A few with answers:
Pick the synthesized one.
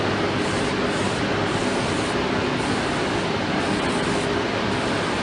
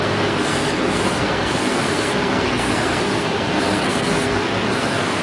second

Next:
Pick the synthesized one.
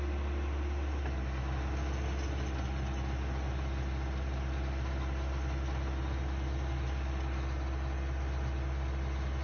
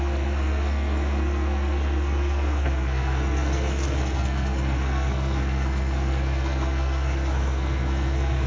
second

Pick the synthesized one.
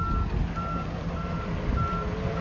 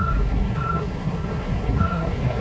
second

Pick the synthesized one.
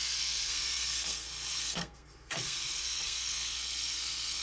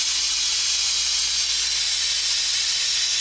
first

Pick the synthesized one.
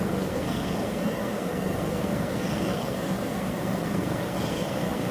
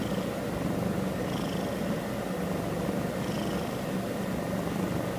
first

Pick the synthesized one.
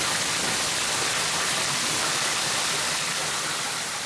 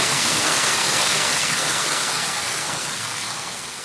second